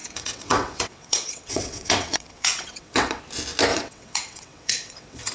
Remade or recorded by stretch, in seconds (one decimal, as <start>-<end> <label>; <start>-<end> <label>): 0.0-3.2 remade; 3.2-3.7 recorded; 3.7-5.3 remade